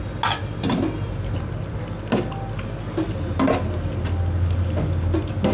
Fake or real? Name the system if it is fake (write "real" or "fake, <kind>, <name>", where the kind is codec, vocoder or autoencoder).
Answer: real